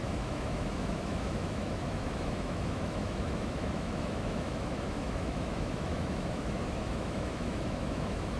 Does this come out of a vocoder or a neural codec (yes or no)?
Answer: yes